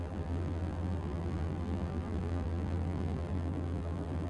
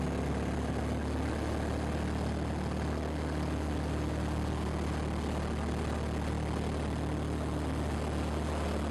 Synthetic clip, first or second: first